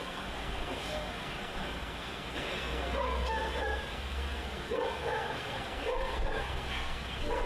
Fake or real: fake